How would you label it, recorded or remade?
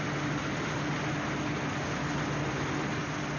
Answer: recorded